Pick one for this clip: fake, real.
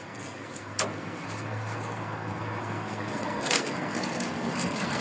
fake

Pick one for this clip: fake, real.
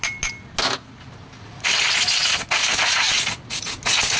real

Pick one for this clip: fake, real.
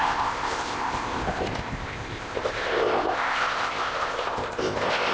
fake